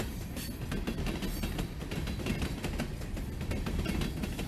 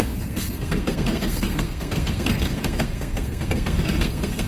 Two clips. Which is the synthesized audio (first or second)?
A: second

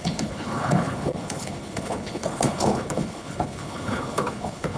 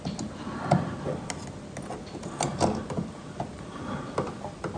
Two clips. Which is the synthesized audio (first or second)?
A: first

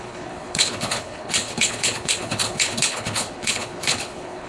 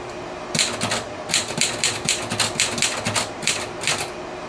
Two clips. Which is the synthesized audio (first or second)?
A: first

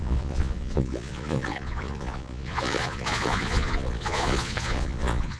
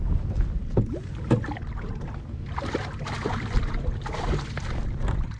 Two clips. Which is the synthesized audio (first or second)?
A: first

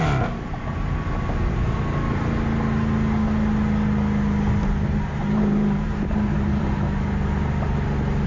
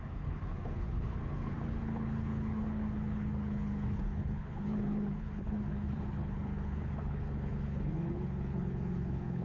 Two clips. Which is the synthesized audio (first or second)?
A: second